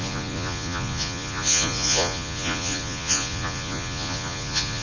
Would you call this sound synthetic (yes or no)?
yes